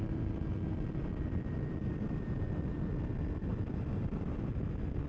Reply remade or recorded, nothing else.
recorded